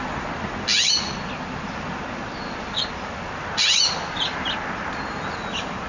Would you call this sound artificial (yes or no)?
no